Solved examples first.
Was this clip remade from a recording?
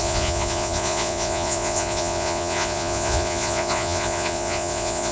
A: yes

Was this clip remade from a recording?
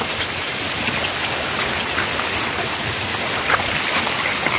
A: no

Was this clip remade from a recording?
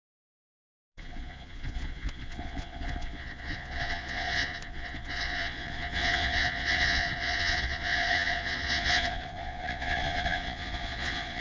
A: yes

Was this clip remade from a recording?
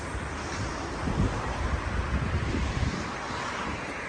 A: no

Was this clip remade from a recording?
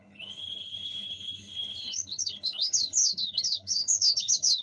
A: yes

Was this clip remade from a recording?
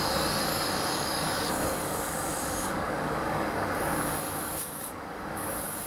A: yes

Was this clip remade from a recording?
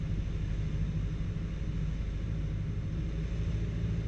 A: no